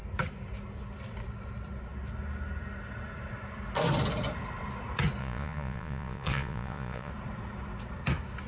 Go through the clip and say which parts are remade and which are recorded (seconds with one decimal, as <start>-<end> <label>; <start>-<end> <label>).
0.0-5.2 recorded; 5.2-7.1 remade; 7.1-8.5 recorded